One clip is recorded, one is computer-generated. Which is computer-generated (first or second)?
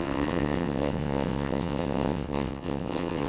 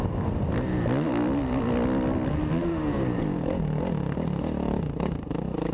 first